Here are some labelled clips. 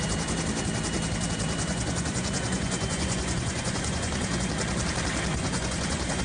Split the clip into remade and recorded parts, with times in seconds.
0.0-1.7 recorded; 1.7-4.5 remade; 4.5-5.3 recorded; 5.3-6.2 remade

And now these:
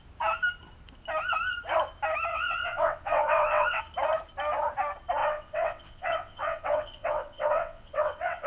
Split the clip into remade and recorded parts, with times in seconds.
0.0-2.3 recorded; 2.3-3.8 remade; 3.8-5.2 recorded; 5.2-8.5 remade

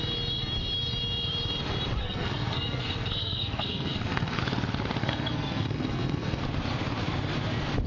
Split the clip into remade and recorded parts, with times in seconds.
0.0-2.0 recorded; 2.0-4.4 remade; 4.4-5.0 recorded; 5.0-6.4 remade; 6.4-7.9 recorded

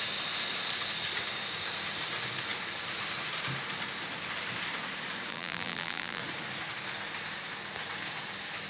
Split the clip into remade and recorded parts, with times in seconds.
0.0-5.3 recorded; 5.3-6.2 remade; 6.2-8.7 recorded

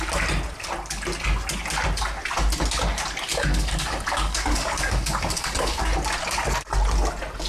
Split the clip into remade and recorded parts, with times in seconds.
0.0-3.3 recorded; 3.3-5.9 remade; 5.9-7.5 recorded